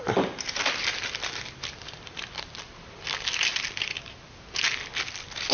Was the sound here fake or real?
real